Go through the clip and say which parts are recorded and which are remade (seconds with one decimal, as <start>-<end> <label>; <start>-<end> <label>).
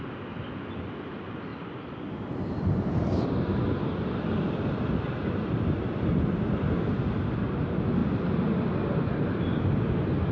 0.0-10.3 recorded